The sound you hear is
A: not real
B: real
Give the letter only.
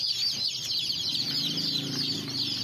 B